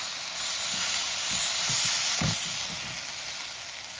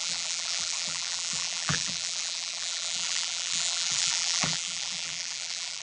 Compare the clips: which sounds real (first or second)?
first